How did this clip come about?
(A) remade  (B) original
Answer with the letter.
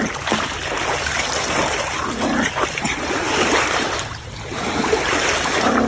B